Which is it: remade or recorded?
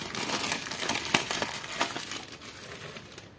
recorded